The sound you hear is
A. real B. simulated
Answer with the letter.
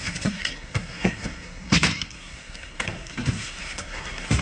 B